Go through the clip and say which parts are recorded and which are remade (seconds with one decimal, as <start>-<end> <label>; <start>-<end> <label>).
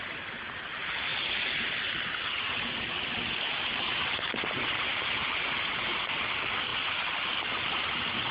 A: 0.0-1.1 remade; 1.1-5.9 recorded; 5.9-8.3 remade